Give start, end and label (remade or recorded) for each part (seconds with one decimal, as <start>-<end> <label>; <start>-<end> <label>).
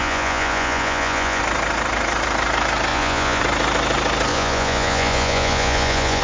0.0-1.4 remade; 1.4-2.9 recorded; 2.9-3.4 remade; 3.4-4.3 recorded; 4.3-6.2 remade